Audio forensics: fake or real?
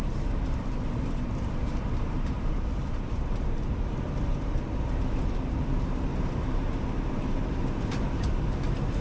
fake